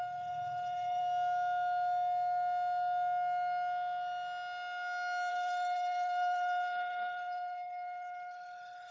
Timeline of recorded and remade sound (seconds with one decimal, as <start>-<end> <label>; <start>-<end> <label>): 0.0-1.0 remade; 1.0-5.3 recorded; 5.3-8.9 remade